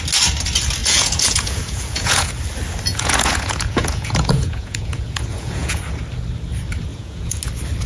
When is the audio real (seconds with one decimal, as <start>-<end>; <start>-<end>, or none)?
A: 0.0-0.8; 2.3-2.9; 5.8-6.9; 7.4-7.9